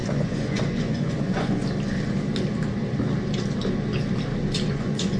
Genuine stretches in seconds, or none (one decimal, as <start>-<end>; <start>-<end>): 1.6-4.7